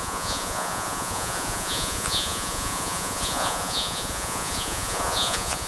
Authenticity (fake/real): fake